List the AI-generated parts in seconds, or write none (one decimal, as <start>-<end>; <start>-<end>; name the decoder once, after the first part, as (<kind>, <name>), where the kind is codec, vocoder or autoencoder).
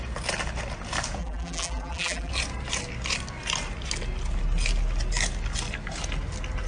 1.2-2.3 (vocoder, BigVGAN v2)